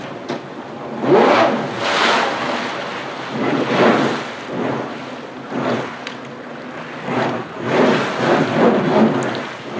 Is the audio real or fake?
real